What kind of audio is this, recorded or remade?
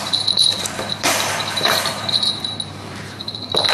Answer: remade